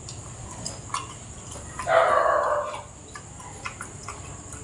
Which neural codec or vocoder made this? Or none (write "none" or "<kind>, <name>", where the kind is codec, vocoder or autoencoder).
none